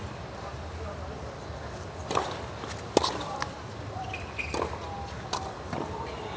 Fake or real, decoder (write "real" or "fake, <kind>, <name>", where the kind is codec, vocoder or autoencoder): real